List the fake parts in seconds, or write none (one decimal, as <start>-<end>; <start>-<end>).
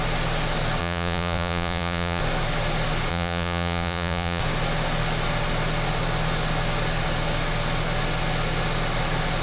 0.8-2.2; 3.1-4.4